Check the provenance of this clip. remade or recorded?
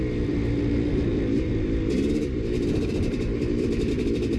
remade